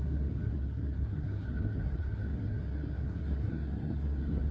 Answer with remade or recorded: remade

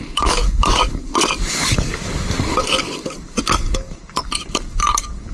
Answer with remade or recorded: remade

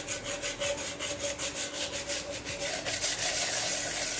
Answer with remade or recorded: recorded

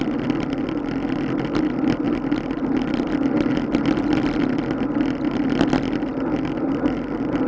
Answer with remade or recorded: recorded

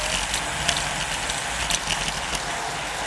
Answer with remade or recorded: recorded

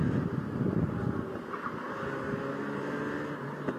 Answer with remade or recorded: recorded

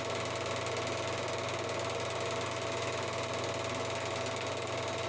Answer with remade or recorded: recorded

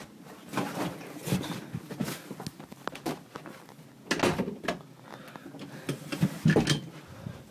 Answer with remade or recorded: recorded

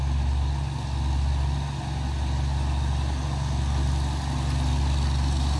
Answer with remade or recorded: recorded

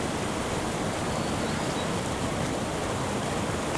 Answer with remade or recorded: recorded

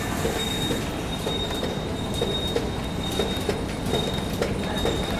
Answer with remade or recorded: recorded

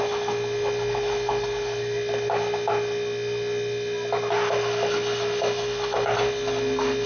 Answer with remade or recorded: recorded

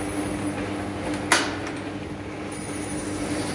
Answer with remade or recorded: recorded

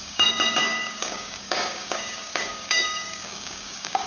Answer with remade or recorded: remade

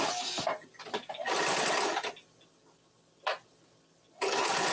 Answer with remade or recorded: recorded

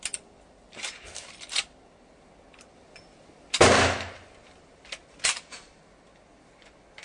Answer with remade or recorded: recorded